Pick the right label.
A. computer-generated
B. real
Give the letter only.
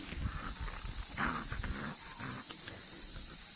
B